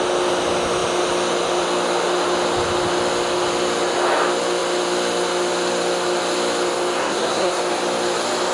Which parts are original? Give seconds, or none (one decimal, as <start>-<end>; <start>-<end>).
0.0-7.0; 7.6-8.5